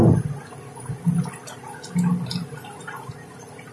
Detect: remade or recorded recorded